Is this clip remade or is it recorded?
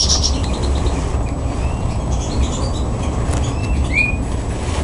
recorded